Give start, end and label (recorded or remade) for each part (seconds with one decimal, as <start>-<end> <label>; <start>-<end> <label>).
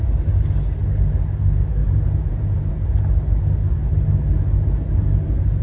0.0-1.8 recorded; 1.8-2.7 remade; 2.7-5.6 recorded